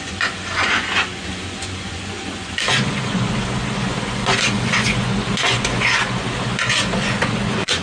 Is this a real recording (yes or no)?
no